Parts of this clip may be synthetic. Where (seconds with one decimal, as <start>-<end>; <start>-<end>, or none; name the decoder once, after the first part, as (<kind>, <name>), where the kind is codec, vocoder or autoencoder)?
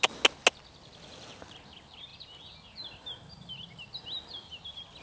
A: none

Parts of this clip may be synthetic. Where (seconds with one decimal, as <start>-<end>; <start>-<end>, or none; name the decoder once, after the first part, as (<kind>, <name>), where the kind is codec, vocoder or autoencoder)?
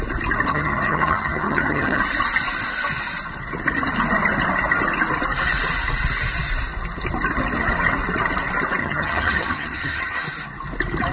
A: 0.5-2.0 (vocoder, HiFi-GAN); 8.8-10.2